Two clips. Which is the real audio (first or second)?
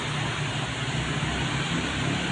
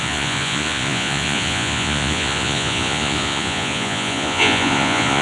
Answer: first